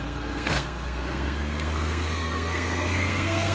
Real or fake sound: fake